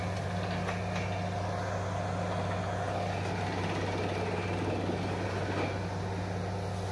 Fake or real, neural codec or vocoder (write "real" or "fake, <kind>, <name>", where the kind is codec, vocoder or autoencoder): real